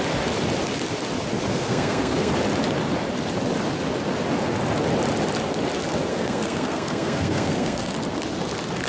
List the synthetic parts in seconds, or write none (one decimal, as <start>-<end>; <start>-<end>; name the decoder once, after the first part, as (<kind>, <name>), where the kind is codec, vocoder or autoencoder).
1.5-2.3 (codec, SNAC); 6.1-7.9